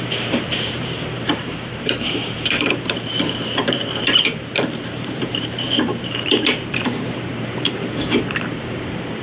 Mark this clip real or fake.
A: fake